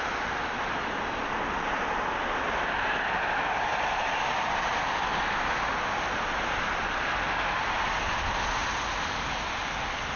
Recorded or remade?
recorded